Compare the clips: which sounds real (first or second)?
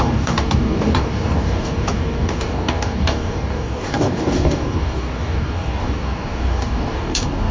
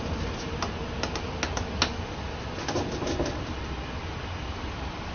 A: second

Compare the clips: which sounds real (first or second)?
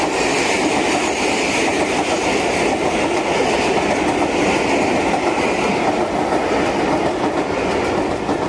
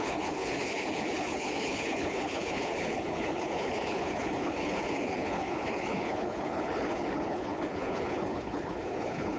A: first